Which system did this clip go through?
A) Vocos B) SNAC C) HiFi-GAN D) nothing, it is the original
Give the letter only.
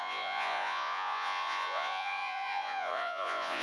A